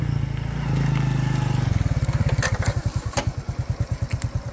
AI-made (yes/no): no